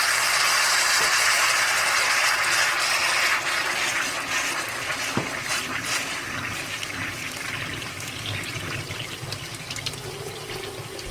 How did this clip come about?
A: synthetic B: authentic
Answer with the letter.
B